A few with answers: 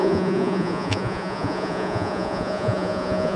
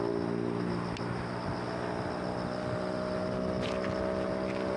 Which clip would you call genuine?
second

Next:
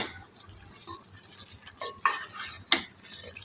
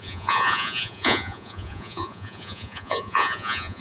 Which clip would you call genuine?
first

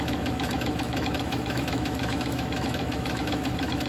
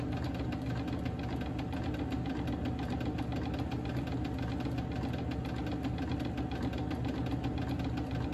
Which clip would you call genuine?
second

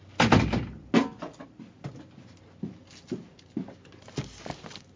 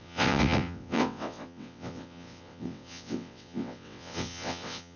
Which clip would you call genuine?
first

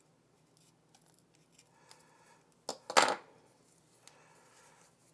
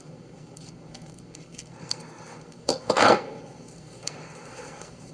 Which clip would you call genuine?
first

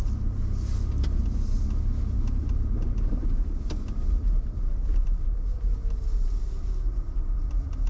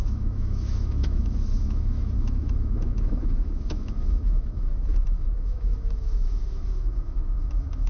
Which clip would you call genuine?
first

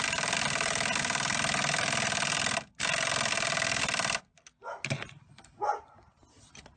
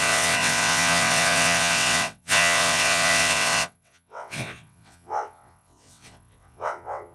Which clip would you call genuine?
first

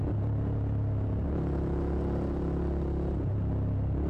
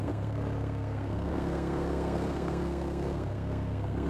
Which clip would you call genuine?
first